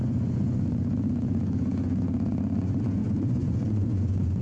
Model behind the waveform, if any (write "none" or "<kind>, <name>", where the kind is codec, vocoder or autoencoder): vocoder, Vocos